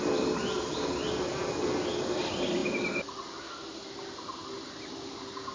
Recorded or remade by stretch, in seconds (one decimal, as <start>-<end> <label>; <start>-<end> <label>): 0.0-5.5 recorded